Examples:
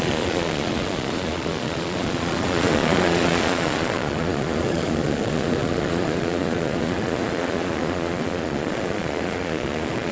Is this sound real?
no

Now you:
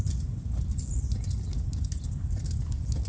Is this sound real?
yes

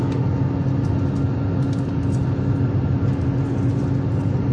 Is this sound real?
yes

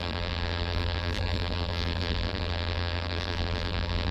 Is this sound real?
no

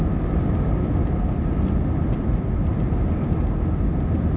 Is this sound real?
yes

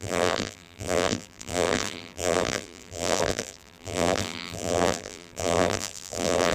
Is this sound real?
no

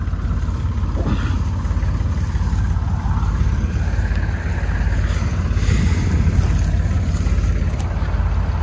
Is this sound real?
yes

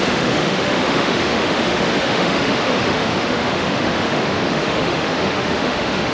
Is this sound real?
no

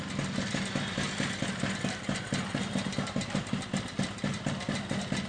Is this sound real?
yes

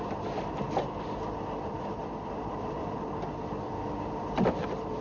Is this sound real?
yes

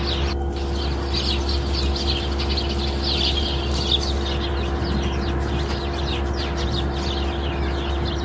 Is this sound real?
yes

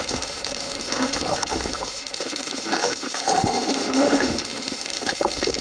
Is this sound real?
no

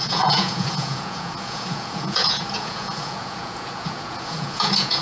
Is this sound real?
no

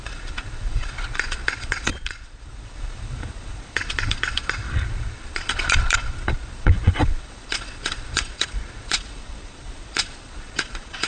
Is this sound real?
no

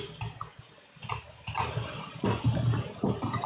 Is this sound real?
yes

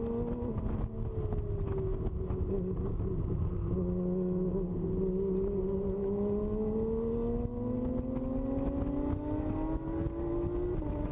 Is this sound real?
yes